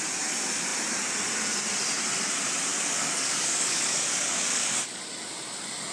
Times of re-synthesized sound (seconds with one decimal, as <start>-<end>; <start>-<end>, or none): 2.7-5.0